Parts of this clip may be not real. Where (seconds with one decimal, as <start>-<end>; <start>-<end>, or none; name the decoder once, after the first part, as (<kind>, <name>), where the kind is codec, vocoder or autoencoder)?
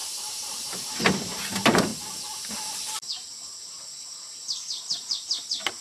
0.0-1.9 (vocoder, BigVGAN v2); 2.5-5.8